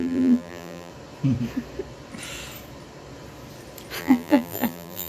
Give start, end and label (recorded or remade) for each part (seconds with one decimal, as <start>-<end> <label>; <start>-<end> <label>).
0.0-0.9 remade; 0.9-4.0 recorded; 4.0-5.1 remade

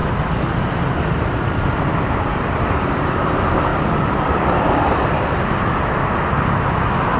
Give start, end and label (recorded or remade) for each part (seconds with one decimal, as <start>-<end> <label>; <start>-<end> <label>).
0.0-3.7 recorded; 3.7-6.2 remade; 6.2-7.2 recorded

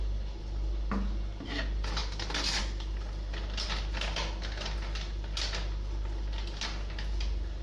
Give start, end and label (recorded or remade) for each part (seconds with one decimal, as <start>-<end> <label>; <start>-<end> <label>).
0.0-7.6 recorded

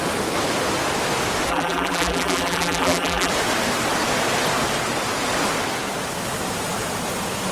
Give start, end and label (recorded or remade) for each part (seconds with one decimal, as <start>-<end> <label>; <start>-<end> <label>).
0.0-1.5 recorded; 1.5-3.3 remade; 3.3-7.5 recorded

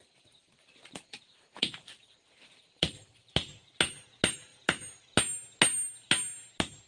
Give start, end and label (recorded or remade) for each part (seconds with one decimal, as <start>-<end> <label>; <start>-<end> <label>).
0.0-0.4 recorded; 0.4-3.8 remade; 3.8-4.5 recorded; 4.5-5.1 remade; 5.1-6.9 recorded

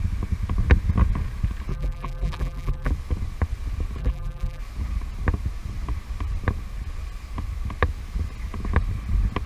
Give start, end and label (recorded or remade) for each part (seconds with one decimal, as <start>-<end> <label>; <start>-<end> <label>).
0.0-1.7 recorded; 1.7-2.9 remade; 2.9-4.0 recorded; 4.0-4.6 remade; 4.6-9.5 recorded